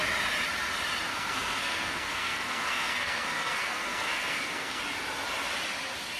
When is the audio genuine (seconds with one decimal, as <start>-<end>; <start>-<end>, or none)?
0.0-1.1; 4.8-6.2